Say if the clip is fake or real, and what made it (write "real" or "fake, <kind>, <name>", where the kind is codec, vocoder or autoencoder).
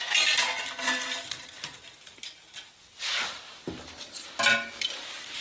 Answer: real